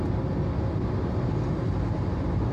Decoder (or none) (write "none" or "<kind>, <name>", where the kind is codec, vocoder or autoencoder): none